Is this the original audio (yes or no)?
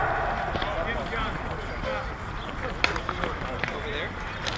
yes